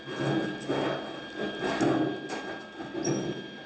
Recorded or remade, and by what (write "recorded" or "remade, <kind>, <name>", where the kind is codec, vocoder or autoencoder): recorded